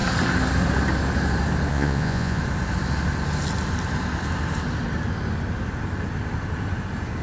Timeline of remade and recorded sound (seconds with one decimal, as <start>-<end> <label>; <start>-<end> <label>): 0.0-1.7 recorded; 1.7-2.4 remade; 2.4-7.2 recorded